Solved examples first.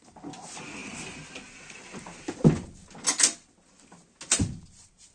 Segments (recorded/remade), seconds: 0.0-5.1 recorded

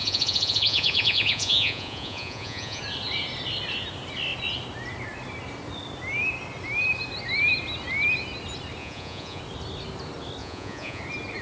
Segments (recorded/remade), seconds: 0.0-2.8 remade; 2.8-8.8 recorded; 8.8-9.4 remade; 9.4-10.4 recorded; 10.4-11.0 remade; 11.0-11.4 recorded

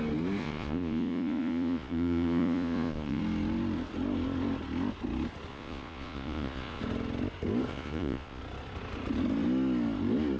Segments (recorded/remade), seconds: 0.0-0.4 recorded; 0.4-3.2 remade; 3.2-5.5 recorded; 5.5-6.8 remade; 6.8-7.7 recorded; 7.7-8.4 remade; 8.4-10.4 recorded